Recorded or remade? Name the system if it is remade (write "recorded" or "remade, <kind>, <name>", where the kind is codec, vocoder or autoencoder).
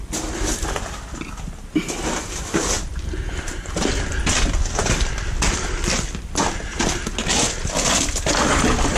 recorded